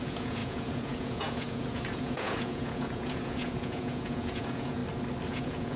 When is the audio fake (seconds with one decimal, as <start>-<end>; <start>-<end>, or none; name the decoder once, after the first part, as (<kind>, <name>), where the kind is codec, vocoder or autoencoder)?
0.0-4.8 (vocoder, Vocos); 5.3-5.8